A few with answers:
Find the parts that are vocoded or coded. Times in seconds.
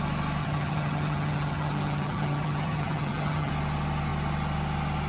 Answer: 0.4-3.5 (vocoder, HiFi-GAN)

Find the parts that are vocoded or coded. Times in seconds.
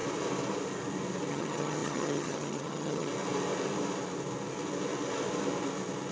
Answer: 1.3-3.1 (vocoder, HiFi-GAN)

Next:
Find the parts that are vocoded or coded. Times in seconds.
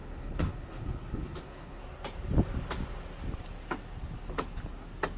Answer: 0.0-1.8 (codec, HILCodec)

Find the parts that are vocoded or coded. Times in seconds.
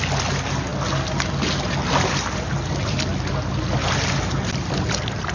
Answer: none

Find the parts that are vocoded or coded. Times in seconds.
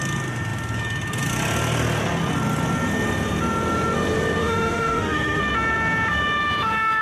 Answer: 4.4-5.4 (autoencoder, DAC-VAE)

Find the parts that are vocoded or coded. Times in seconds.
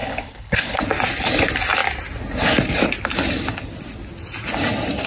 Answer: 0.0-0.8 (codec, HILCodec)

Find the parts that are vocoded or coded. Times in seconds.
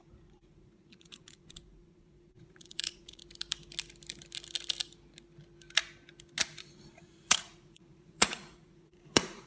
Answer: 0.0-3.2 (vocoder, Vocos); 6.6-9.5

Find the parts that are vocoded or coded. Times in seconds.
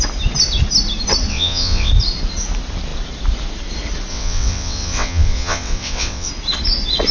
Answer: 1.3-1.9 (vocoder, WaveNeXt); 4.1-6.3